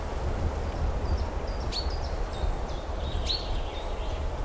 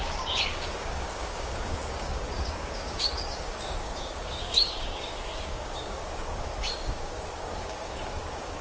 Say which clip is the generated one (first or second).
second